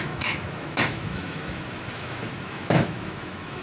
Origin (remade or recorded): remade